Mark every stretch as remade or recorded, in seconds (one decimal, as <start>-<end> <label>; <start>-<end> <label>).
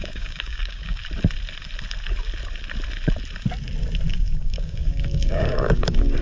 0.0-1.0 remade; 1.0-4.1 recorded; 4.1-6.2 remade